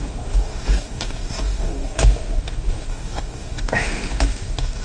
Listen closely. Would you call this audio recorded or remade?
remade